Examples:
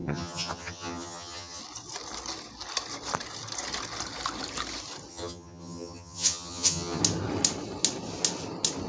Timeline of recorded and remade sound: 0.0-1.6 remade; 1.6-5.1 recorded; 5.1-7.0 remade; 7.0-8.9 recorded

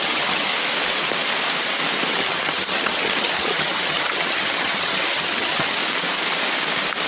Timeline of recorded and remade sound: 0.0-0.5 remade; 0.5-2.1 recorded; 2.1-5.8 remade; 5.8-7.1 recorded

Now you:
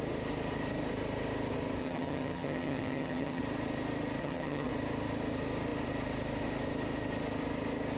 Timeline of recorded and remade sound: 0.0-1.8 recorded; 1.8-3.4 remade; 3.4-4.2 recorded; 4.2-4.7 remade; 4.7-8.0 recorded

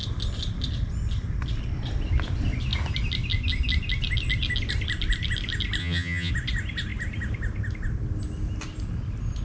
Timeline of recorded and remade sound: 0.0-5.8 recorded; 5.8-6.3 remade; 6.3-9.4 recorded

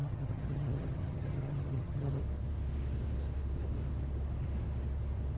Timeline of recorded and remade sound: 0.0-2.2 remade; 2.2-5.4 recorded